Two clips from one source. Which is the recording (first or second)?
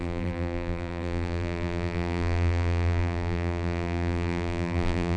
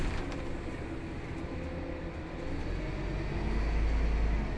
second